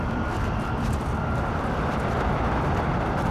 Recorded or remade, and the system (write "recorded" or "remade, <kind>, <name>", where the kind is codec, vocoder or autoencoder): remade, vocoder, BigVGAN v2